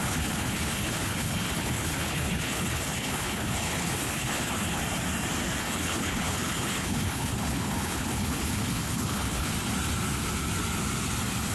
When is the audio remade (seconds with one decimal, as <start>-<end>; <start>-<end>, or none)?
0.0-4.8; 5.6-9.5